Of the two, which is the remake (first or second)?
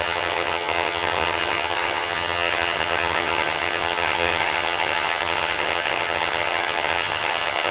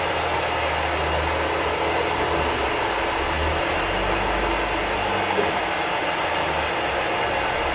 first